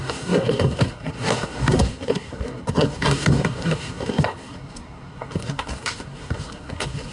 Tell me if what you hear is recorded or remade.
remade